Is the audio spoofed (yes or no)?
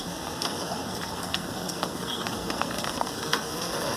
yes